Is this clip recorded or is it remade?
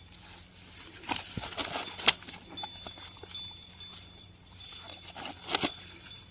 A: recorded